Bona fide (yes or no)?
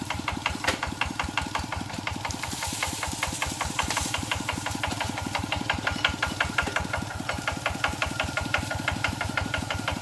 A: no